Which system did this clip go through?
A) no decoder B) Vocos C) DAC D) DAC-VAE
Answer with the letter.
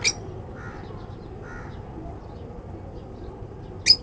A